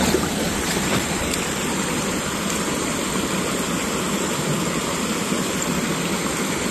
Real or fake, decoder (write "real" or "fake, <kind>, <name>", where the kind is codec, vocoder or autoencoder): fake, vocoder, BigVGAN v2